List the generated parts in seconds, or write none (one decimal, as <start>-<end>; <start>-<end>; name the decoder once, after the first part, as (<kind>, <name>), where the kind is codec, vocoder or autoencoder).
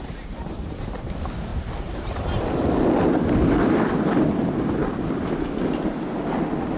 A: 1.5-2.5 (vocoder, BigVGAN v2); 4.8-5.3